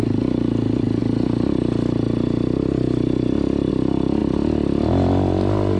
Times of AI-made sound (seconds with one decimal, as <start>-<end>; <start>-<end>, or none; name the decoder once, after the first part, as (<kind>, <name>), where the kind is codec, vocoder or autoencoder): none

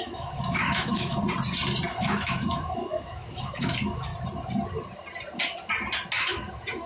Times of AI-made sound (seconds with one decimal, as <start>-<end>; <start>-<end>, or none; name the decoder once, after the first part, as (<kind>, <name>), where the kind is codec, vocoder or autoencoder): 0.0-1.2 (autoencoder, DAC-VAE); 1.9-4.1; 6.2-6.9

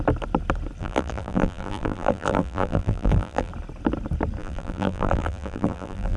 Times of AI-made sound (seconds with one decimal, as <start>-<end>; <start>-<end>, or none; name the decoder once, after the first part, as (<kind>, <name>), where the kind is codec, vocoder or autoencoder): 0.8-3.5 (vocoder, BigVGAN v2); 4.4-6.2

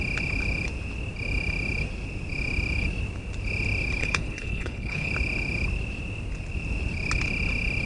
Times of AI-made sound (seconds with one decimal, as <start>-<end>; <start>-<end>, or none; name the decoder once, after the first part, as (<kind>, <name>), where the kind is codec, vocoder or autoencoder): 4.0-5.1 (codec, HILCodec)

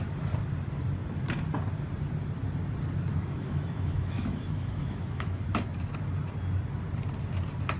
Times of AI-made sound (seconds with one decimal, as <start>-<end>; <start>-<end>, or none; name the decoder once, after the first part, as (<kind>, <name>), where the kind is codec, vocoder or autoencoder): 3.1-5.4 (autoencoder, DAC-VAE)

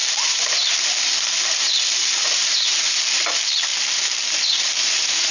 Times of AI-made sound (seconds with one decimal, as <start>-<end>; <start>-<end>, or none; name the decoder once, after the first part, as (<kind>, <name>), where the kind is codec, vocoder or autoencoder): 0.0-3.2 (vocoder, BigVGAN v2)